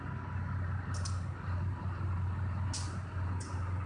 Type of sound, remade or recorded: recorded